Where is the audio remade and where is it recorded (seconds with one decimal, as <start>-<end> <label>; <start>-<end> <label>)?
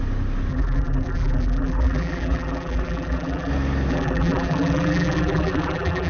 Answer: 0.0-0.5 recorded; 0.5-3.5 remade; 3.5-3.9 recorded; 3.9-6.1 remade